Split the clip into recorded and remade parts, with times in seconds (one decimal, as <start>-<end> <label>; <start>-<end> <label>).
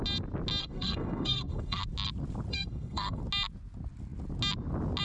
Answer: 0.0-0.6 recorded; 0.6-1.8 remade; 1.8-2.5 recorded; 2.5-3.2 remade; 3.2-5.0 recorded